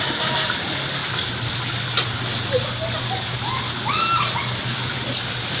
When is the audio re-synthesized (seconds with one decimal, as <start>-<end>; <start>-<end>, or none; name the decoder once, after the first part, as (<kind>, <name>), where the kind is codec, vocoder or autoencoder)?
none

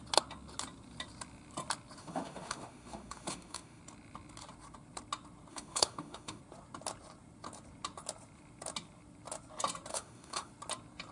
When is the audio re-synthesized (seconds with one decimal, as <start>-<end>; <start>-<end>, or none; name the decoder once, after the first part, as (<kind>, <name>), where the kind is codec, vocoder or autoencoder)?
2.0-3.8 (autoencoder, DAC-VAE); 5.5-6.4; 9.9-10.5

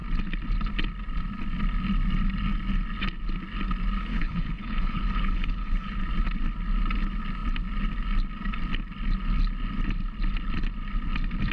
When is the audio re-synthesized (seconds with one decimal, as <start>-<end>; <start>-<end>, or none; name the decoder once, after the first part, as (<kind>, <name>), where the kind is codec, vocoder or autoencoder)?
4.1-6.0 (codec, HILCodec)